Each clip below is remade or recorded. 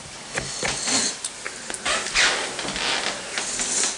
recorded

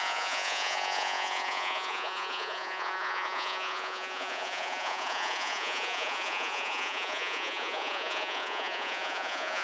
remade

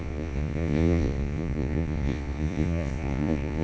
remade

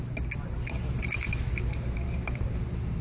recorded